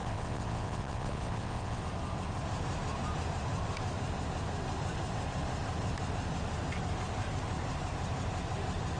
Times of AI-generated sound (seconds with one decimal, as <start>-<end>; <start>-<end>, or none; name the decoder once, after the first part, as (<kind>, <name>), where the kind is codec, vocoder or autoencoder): 0.0-1.8 (vocoder, WaveNeXt)